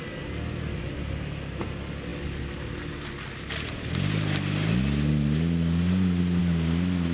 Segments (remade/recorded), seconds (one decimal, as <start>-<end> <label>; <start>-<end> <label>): 0.0-7.1 recorded